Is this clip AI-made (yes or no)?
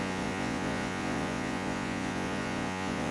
yes